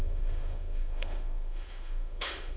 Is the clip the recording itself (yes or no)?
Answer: no